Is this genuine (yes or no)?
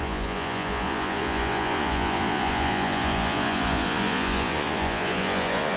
no